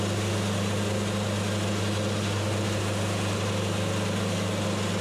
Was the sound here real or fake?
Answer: real